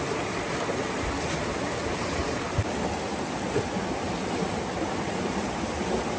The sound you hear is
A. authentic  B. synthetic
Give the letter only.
A